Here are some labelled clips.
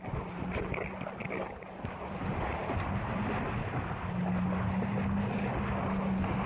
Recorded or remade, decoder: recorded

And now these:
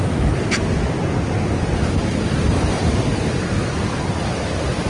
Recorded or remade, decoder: remade, vocoder, BigVGAN v2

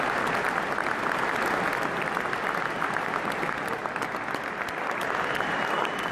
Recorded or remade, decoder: recorded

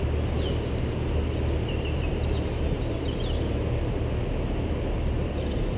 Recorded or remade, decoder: recorded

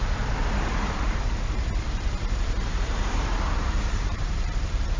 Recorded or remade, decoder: remade, vocoder, BigVGAN v2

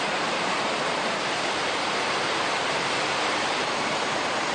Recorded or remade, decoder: remade, vocoder, BigVGAN v2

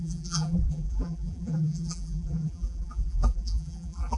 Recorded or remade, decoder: remade, vocoder, BigVGAN v2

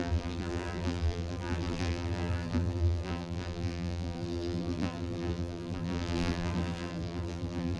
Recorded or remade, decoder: remade, vocoder, BigVGAN v2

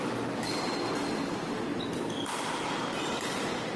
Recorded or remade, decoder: remade, vocoder, BigVGAN v2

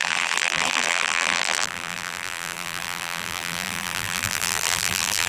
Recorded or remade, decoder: remade, vocoder, BigVGAN v2